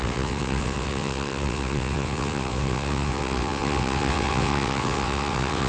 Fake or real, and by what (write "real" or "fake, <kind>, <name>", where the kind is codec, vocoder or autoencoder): fake, vocoder, WaveNeXt